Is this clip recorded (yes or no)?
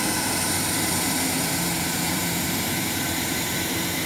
no